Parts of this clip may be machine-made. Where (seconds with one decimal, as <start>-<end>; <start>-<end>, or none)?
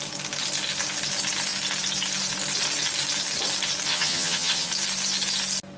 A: 3.9-4.7